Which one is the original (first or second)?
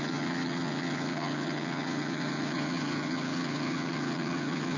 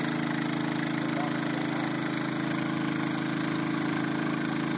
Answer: second